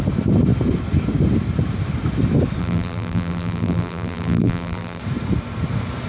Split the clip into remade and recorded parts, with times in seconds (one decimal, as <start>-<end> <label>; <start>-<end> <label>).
0.0-2.6 recorded; 2.6-5.0 remade; 5.0-6.1 recorded